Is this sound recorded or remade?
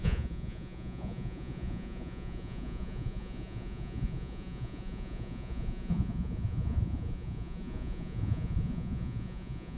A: remade